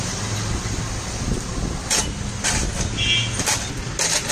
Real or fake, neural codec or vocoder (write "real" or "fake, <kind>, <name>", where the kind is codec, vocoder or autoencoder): real